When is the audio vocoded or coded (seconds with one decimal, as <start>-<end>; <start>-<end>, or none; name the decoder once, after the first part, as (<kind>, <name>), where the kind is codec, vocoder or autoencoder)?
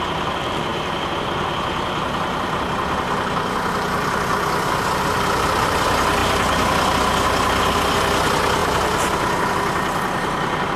none